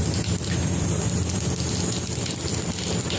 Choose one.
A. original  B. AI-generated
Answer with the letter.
B